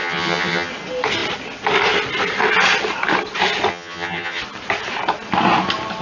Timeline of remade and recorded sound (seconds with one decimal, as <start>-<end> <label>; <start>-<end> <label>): 0.0-0.7 remade; 0.7-3.7 recorded; 3.7-4.4 remade; 4.4-6.0 recorded